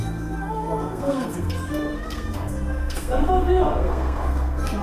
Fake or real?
fake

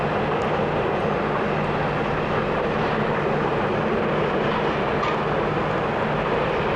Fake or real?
real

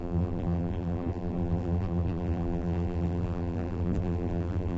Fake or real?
fake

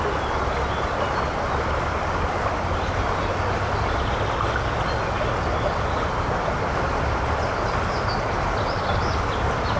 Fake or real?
real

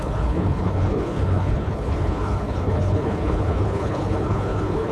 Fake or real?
fake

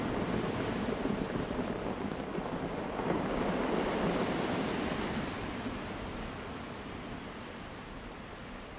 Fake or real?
real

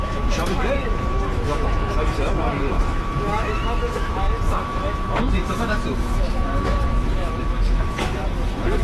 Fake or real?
fake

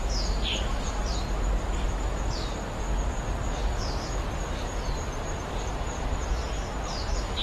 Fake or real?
fake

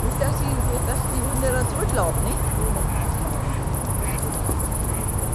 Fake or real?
real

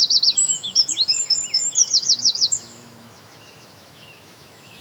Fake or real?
fake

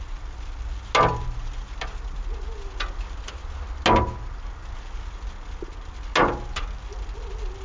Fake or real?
real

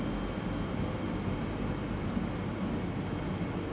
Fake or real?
real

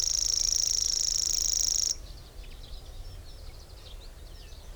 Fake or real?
real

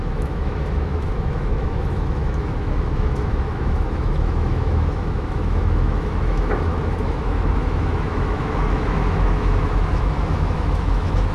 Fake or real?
fake